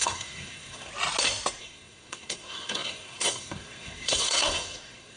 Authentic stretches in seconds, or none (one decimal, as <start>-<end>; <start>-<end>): 0.9-1.6